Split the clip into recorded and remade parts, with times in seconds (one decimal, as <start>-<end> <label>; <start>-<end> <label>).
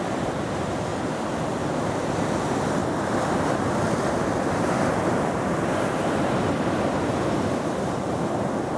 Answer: 0.0-0.9 remade; 0.9-1.7 recorded; 1.7-8.8 remade